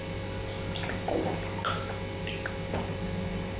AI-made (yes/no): no